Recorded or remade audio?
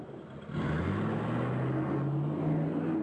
recorded